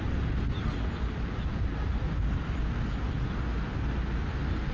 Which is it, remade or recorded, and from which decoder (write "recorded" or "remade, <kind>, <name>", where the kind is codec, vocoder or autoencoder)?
recorded